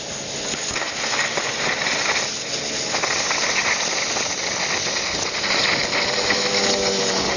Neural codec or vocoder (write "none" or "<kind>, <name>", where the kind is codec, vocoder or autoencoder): none